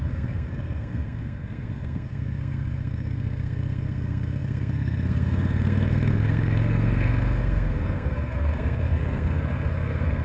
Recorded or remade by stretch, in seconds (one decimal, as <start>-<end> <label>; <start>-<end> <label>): 0.0-10.2 remade